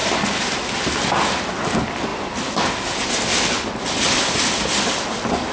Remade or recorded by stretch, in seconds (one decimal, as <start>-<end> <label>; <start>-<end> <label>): 0.0-5.5 recorded